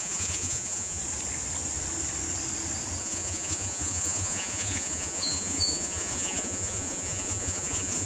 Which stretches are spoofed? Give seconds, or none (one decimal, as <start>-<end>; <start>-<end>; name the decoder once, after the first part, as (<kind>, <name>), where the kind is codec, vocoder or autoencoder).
0.0-1.0 (vocoder, Vocos); 3.0-8.1